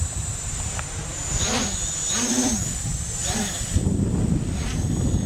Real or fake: fake